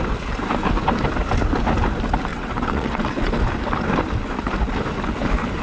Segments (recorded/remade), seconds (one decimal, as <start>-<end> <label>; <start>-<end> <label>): 0.0-2.3 recorded; 2.3-3.3 remade; 3.3-5.6 recorded